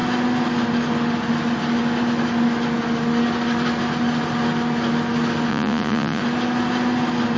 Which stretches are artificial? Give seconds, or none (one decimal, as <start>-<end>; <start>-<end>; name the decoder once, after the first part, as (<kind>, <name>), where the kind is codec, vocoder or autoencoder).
5.5-6.2 (vocoder, Vocos)